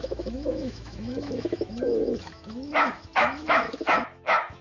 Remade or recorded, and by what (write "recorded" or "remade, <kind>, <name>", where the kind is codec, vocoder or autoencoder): remade, autoencoder, DAC-VAE